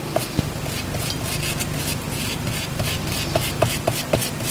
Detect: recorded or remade recorded